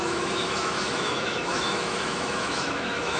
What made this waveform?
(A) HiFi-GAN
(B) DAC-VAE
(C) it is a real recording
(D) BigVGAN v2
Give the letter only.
B